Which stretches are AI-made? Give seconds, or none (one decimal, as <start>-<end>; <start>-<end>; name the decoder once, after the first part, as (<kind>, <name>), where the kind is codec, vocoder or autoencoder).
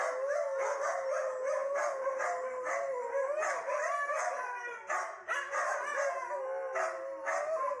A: none